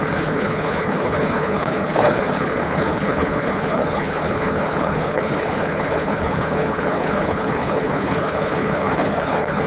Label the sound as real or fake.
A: fake